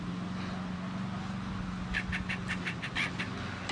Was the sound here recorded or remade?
recorded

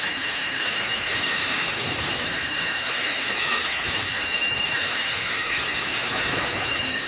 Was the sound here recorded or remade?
remade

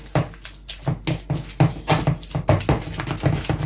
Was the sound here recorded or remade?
recorded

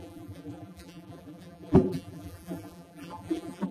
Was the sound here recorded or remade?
remade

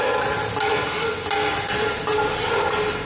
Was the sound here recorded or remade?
recorded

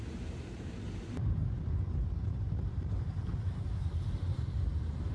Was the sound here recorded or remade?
remade